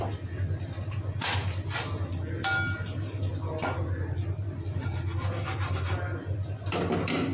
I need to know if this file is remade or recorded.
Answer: recorded